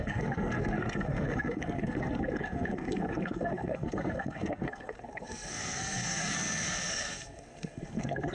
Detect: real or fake fake